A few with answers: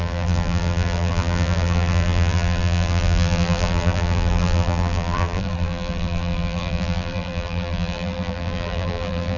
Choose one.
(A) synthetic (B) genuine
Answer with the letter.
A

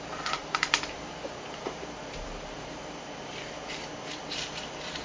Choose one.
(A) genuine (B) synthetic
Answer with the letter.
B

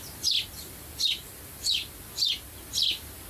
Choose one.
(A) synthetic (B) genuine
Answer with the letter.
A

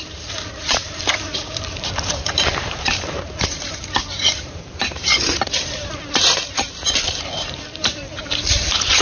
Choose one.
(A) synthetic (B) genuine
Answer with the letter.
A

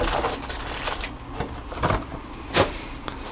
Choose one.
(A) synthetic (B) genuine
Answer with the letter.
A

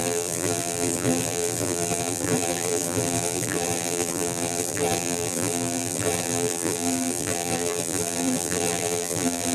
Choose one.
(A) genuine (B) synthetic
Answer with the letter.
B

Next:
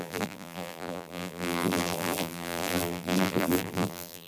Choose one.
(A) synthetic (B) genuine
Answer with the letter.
A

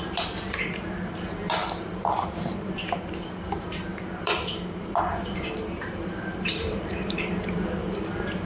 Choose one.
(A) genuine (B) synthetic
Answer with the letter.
B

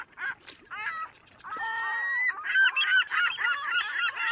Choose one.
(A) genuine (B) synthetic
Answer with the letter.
B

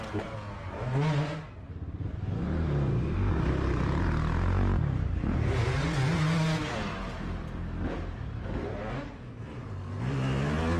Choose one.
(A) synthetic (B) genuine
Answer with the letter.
B